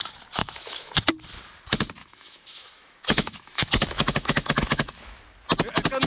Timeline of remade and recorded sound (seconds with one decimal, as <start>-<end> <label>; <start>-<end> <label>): 0.0-0.4 recorded; 0.4-0.9 remade; 0.9-2.0 recorded; 2.0-5.2 remade; 5.2-6.1 recorded